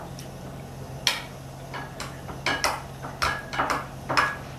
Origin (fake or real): real